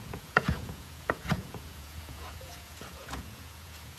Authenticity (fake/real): fake